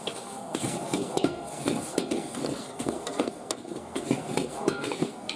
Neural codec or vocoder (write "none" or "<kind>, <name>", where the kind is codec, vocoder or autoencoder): codec, SNAC